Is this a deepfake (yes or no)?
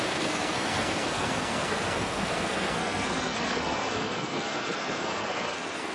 yes